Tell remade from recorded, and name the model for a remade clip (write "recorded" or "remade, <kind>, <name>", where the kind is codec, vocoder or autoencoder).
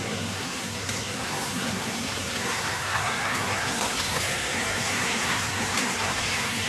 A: remade, codec, SNAC